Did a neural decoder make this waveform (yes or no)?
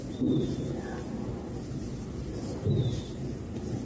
yes